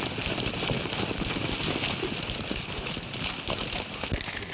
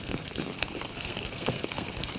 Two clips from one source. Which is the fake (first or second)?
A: second